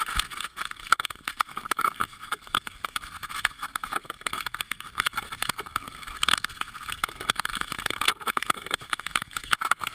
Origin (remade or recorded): remade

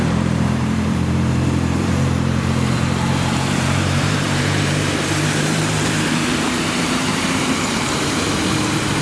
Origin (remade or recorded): remade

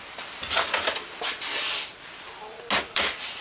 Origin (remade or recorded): recorded